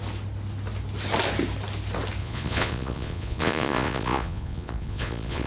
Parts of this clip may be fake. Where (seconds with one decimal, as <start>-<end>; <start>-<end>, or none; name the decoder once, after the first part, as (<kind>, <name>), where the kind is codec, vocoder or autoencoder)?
2.2-5.5 (vocoder, Vocos)